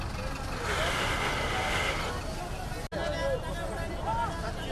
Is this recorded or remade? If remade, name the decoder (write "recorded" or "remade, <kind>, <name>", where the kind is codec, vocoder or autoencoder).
recorded